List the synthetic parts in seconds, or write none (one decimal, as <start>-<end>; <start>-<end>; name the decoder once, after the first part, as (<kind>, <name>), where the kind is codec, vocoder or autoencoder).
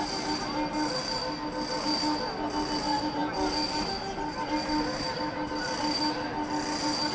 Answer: none